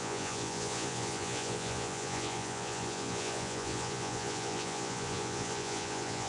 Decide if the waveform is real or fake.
fake